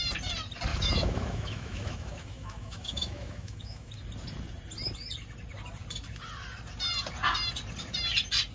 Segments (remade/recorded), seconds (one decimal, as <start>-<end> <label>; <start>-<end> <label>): 0.0-0.7 recorded; 0.7-3.9 remade; 3.9-8.5 recorded